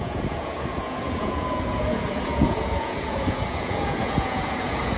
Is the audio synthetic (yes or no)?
yes